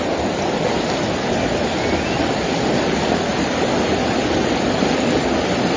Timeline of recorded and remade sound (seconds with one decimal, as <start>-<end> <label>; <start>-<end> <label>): 0.0-5.8 recorded